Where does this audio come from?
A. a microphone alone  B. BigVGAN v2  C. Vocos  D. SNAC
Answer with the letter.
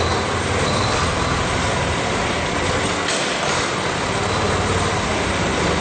A